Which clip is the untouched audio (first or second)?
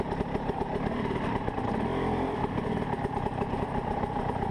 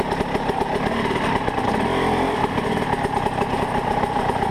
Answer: second